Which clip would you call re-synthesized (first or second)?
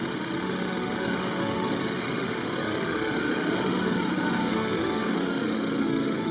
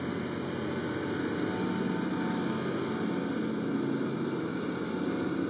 first